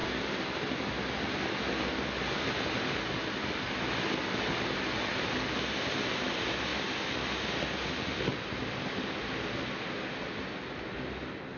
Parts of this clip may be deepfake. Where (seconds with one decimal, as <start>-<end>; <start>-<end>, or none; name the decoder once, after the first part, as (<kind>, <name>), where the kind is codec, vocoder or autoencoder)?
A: none

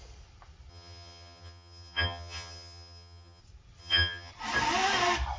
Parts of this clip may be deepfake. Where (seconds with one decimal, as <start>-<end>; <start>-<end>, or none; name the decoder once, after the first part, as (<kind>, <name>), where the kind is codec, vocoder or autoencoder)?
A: 0.7-3.4 (vocoder, HiFi-GAN); 3.8-4.3

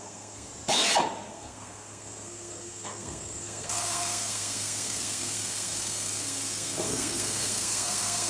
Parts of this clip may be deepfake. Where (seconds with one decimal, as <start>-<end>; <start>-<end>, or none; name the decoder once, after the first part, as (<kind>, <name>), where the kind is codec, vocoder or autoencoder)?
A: 0.0-0.5 (codec, SNAC); 1.3-8.3

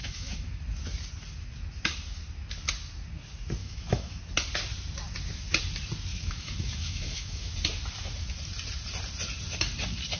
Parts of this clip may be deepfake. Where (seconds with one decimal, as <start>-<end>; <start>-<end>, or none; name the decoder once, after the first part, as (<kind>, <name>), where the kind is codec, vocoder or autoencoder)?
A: 0.0-0.6 (autoencoder, DAC-VAE); 3.6-4.2; 6.1-7.5

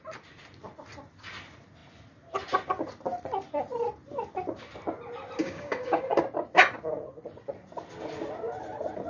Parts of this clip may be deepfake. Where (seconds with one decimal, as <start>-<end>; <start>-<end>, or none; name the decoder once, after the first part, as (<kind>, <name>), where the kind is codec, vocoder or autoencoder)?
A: 5.4-6.2 (codec, DAC)

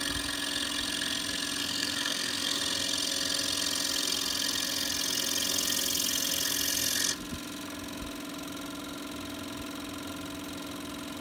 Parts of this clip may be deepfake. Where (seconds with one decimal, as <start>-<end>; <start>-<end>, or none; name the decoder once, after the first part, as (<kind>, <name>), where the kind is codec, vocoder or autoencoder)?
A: 1.6-2.6 (codec, SNAC)

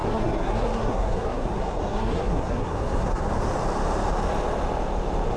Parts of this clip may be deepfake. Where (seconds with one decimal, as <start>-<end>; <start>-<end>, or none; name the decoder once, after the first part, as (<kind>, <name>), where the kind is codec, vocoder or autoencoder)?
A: 0.0-3.2 (codec, SNAC)